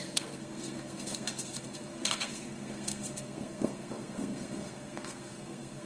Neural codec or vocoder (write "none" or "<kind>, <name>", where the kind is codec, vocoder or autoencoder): codec, SNAC